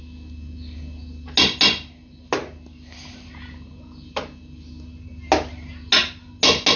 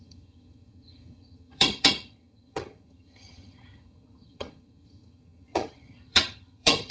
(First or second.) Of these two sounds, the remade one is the second